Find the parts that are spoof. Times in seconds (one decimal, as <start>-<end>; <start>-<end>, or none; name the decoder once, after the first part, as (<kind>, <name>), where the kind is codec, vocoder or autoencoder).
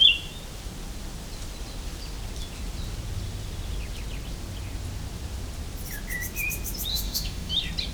6.9-7.5 (autoencoder, DAC-VAE)